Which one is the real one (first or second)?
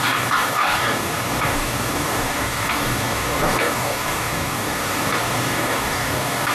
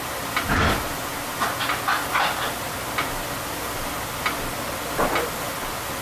second